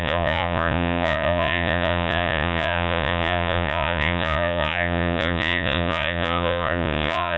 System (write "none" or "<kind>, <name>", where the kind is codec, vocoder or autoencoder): vocoder, Vocos